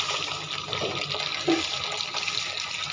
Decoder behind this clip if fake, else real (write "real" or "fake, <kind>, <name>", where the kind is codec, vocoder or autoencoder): real